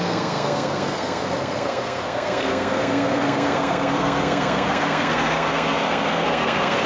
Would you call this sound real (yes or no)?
no